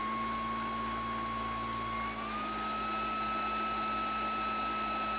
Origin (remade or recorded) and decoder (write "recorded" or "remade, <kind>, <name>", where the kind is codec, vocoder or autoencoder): recorded